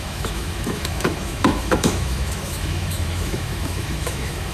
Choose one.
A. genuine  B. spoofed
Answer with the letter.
B